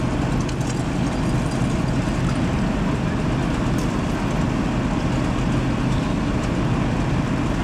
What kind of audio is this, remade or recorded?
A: recorded